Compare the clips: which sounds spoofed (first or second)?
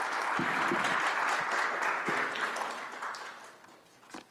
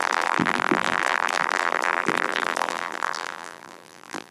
second